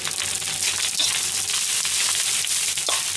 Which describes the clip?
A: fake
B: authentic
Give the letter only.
B